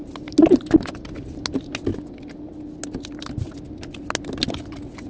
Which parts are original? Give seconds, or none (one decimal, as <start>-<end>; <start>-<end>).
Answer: 0.0-5.1